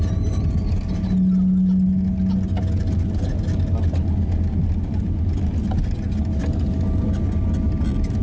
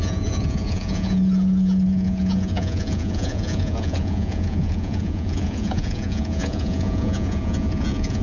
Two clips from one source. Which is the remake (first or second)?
second